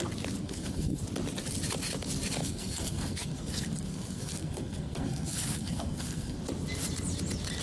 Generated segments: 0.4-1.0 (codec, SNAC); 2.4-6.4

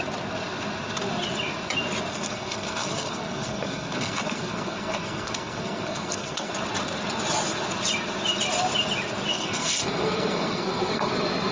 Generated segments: 2.1-6.5 (codec, SNAC); 9.3-11.1

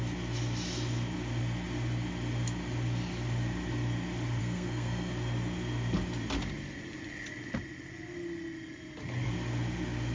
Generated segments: 4.4-5.1 (codec, SNAC)

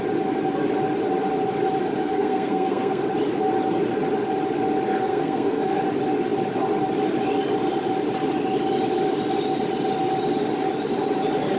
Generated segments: 2.0-3.0 (codec, SNAC); 5.1-5.8

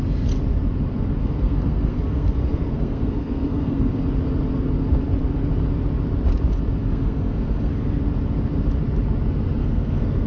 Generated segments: 1.2-4.0 (codec, SNAC); 6.8-8.0; 9.6-10.3

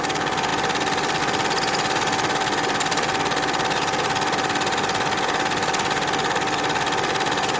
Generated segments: none